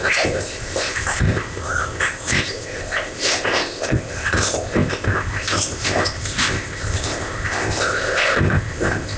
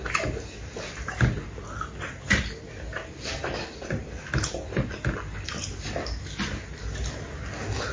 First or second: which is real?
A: second